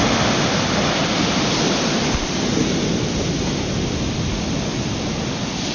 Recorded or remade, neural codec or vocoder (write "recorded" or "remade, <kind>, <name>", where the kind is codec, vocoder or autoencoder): recorded